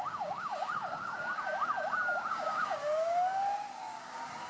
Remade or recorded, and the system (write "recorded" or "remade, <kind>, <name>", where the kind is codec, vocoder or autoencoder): remade, codec, DAC